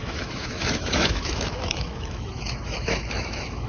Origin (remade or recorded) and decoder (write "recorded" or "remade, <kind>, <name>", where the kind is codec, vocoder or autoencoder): remade, autoencoder, DAC-VAE